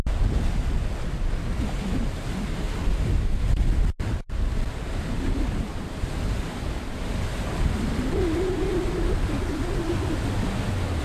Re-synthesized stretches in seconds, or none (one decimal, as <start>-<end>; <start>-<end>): 5.7-10.2